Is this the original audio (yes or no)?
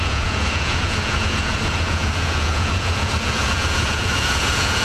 no